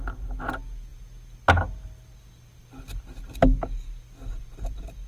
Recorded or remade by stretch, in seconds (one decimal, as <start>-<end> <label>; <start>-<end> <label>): 0.0-5.1 recorded